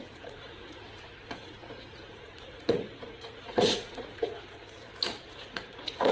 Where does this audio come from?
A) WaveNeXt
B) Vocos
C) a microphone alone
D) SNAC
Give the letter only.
B